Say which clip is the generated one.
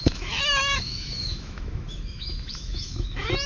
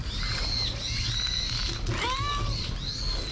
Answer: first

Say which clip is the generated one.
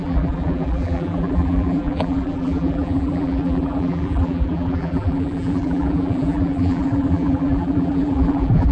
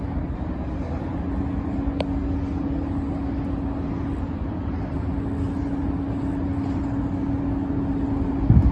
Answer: first